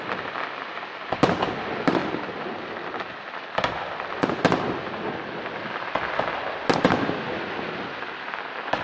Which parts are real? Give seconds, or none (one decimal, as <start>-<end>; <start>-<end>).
0.0-8.8